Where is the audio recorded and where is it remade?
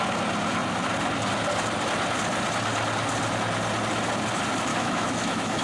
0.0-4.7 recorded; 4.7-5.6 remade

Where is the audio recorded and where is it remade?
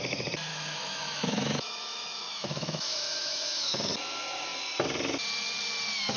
0.0-0.5 recorded; 0.5-3.9 remade; 3.9-6.2 recorded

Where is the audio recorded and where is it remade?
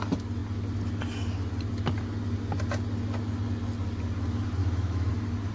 0.0-4.6 recorded; 4.6-5.1 remade; 5.1-5.5 recorded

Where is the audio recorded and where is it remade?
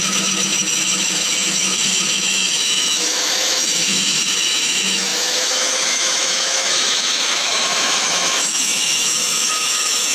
0.0-10.1 remade